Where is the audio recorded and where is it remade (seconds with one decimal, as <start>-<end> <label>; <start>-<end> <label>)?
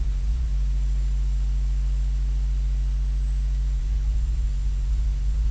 0.0-0.5 remade; 0.5-3.8 recorded; 3.8-5.5 remade